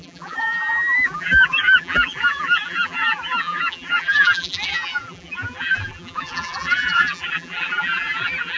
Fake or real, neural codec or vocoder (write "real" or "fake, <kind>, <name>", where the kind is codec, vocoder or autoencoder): fake, vocoder, BigVGAN v2